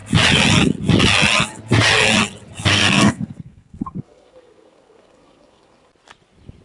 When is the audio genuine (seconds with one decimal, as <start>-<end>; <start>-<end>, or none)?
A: 0.0-2.7; 5.9-6.6